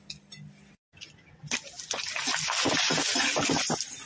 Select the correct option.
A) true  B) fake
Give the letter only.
A